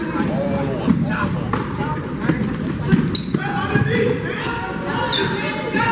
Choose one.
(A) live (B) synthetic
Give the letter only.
A